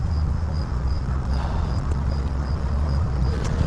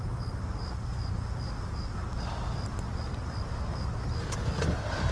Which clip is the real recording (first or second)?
second